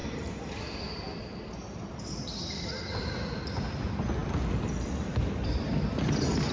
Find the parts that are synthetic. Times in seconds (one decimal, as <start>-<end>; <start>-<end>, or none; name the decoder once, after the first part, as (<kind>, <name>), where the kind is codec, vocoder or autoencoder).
none